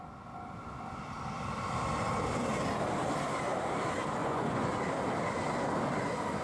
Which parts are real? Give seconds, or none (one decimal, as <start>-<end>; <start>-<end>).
0.0-4.2; 4.7-6.4